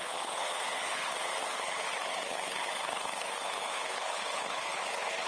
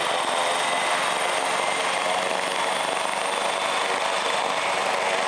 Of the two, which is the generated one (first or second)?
first